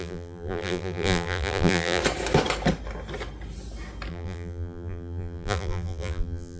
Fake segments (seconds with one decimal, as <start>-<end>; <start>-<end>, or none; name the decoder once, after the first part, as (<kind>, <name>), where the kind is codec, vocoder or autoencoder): 0.0-2.0 (vocoder, BigVGAN v2); 4.1-6.6